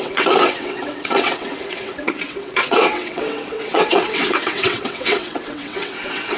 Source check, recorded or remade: remade